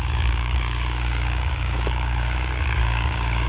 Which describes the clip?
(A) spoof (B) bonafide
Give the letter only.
A